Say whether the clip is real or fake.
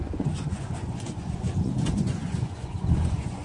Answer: fake